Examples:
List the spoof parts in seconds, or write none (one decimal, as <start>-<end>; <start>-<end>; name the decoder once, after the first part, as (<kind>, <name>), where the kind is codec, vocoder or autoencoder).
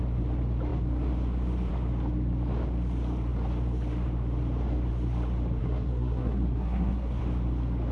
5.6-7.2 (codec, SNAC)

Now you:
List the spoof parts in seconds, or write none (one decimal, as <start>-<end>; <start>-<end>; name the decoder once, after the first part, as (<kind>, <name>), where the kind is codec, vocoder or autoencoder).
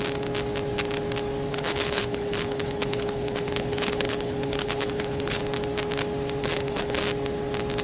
1.5-5.4 (codec, HILCodec); 6.4-7.0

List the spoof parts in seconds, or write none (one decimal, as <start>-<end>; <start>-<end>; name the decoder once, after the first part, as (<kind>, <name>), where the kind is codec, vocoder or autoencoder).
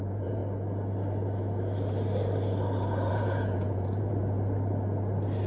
0.0-0.4 (vocoder, Vocos); 3.1-4.1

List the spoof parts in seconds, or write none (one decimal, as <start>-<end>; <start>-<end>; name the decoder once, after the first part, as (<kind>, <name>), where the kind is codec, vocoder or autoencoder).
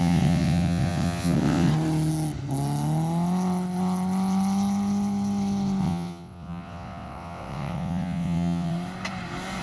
0.0-1.7 (vocoder, WaveNeXt); 5.8-8.7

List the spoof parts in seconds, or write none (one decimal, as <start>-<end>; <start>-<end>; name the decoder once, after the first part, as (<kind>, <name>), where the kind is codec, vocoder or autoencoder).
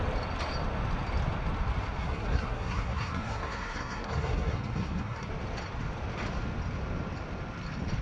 2.0-5.3 (codec, SNAC)